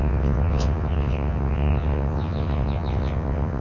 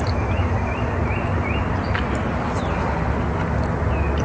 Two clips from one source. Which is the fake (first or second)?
first